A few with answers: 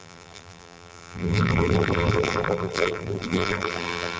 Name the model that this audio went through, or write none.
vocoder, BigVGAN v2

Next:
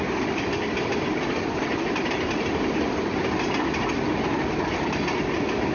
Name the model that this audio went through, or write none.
none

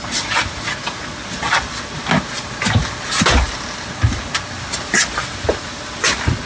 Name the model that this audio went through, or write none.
none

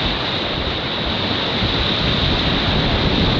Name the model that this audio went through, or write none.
none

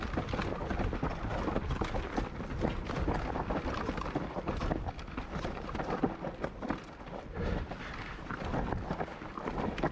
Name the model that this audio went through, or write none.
none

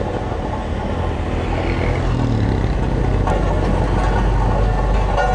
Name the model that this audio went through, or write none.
none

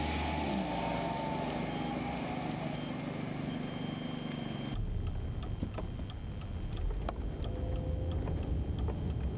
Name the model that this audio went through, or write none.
none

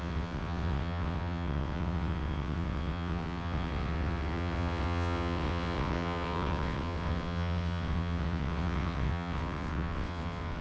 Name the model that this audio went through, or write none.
vocoder, WaveNeXt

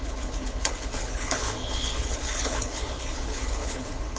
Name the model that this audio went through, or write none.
codec, HILCodec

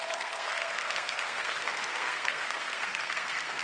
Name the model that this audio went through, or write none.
codec, SNAC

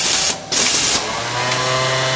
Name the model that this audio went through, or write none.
none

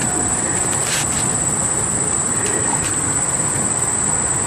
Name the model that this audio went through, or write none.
none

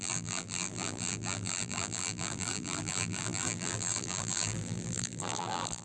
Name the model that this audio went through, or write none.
vocoder, BigVGAN v2